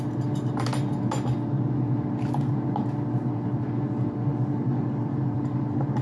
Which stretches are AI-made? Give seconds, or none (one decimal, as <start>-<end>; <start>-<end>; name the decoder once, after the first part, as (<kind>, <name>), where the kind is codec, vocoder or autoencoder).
4.3-6.0 (vocoder, BigVGAN v2)